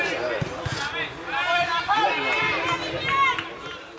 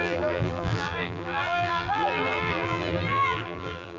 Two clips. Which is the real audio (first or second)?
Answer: first